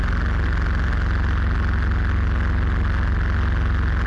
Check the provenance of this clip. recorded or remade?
recorded